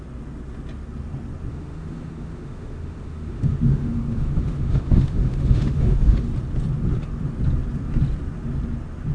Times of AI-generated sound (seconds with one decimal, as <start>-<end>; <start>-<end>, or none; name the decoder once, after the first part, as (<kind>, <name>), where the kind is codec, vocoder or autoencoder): 1.5-6.3 (autoencoder, DAC-VAE)